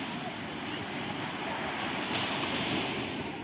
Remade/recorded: recorded